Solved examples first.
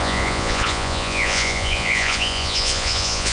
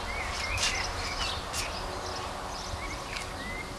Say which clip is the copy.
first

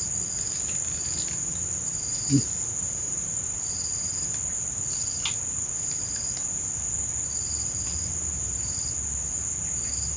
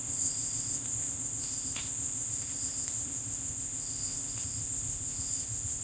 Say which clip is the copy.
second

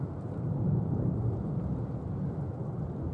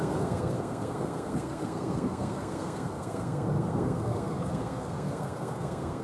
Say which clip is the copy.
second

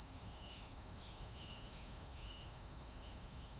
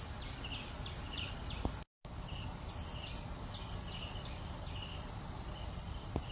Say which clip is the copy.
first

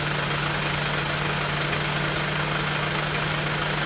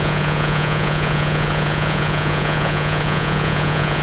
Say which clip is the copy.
second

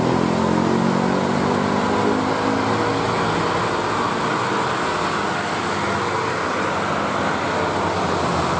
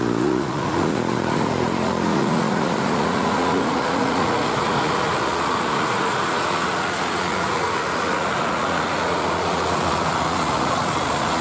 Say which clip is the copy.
second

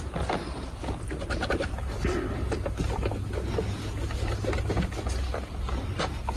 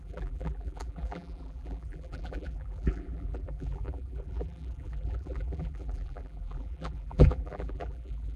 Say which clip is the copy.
second